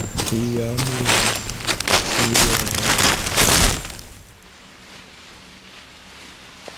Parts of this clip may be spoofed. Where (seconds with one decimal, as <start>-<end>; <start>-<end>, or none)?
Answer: none